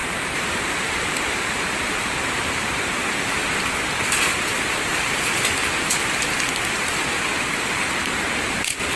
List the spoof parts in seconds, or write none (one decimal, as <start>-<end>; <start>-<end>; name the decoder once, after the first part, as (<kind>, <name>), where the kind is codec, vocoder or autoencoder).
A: 0.0-3.7 (vocoder, BigVGAN v2); 4.9-5.5